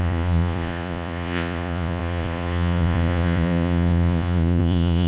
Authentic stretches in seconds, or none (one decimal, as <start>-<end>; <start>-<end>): none